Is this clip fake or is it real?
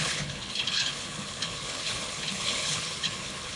fake